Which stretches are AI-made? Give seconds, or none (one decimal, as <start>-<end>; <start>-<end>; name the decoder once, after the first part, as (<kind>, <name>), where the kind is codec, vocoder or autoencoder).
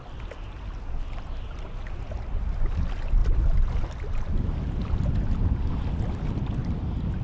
none